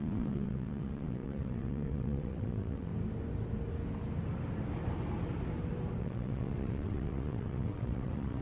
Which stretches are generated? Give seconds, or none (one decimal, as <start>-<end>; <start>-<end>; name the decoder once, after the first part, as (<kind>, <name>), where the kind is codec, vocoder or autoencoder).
0.0-2.9 (vocoder, WaveNeXt); 6.0-8.4